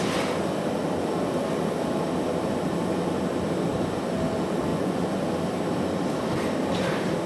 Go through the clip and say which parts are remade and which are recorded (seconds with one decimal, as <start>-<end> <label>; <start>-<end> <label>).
0.0-4.7 recorded; 4.7-5.2 remade; 5.2-7.3 recorded